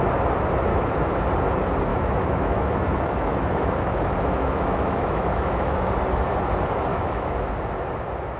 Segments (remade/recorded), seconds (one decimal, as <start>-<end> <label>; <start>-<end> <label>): 0.0-0.7 recorded; 0.7-1.2 remade; 1.2-1.9 recorded; 1.9-5.9 remade; 5.9-6.9 recorded; 6.9-7.5 remade; 7.5-8.4 recorded

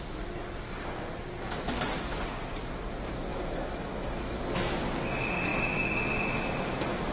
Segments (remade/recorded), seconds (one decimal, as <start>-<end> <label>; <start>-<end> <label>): 0.0-3.3 recorded; 3.3-4.4 remade; 4.4-7.1 recorded

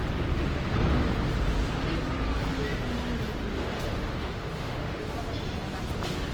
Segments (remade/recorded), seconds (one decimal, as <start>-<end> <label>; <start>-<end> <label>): 0.0-3.5 recorded; 3.5-5.0 remade; 5.0-6.3 recorded

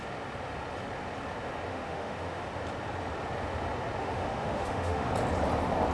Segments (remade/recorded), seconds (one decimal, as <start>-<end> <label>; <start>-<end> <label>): 0.0-1.7 recorded; 1.7-2.4 remade; 2.4-4.0 recorded; 4.0-5.1 remade; 5.1-5.9 recorded

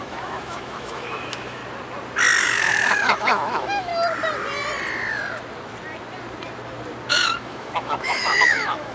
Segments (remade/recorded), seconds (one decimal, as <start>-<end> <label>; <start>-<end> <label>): 0.0-1.6 remade; 1.6-2.4 recorded; 2.4-3.9 remade; 3.9-7.1 recorded; 7.1-8.9 remade

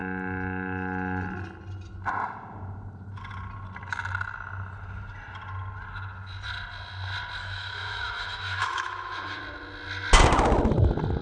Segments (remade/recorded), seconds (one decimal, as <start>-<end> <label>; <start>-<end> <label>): 0.0-7.4 recorded; 7.4-9.4 remade; 9.4-11.2 recorded

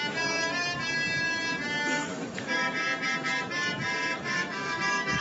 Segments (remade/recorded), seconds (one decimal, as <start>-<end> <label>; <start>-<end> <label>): 0.0-2.1 recorded; 2.1-2.7 remade; 2.7-4.1 recorded; 4.1-5.2 remade